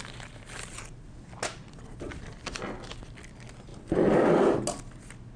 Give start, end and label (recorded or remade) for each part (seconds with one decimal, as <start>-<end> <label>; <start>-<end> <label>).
0.0-5.4 recorded